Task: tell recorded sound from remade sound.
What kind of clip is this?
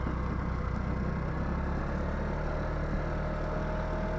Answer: recorded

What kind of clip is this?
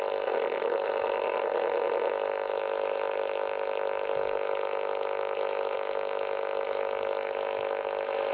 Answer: recorded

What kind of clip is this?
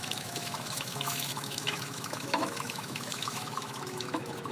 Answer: remade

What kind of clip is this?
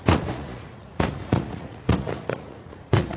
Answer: remade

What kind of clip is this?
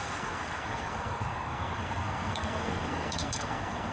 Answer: remade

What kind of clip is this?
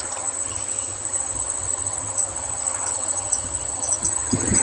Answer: remade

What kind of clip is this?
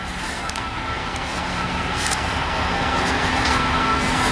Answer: remade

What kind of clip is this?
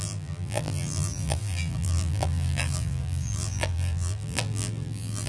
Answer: remade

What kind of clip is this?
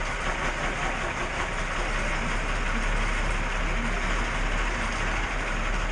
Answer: recorded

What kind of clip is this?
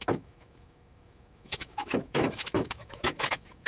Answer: remade